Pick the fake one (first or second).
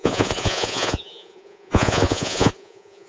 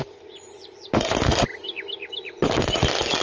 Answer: first